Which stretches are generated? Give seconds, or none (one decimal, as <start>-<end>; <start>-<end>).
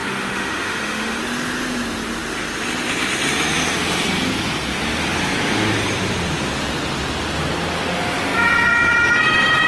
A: 0.0-1.2